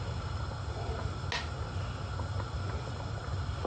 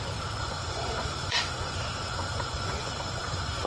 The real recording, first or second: first